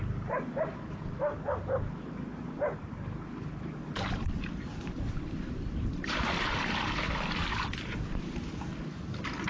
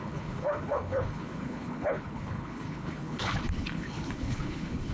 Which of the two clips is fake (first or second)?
second